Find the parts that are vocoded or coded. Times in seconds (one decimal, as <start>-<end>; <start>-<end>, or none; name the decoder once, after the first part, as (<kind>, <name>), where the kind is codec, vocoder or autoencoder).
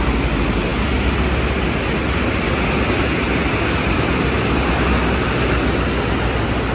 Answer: none